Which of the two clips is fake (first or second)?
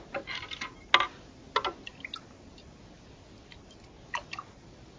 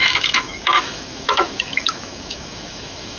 second